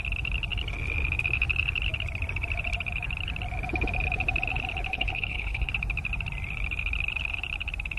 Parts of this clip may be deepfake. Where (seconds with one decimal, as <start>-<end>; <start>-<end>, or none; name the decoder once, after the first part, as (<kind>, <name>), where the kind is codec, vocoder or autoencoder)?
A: 4.9-5.7 (codec, HILCodec)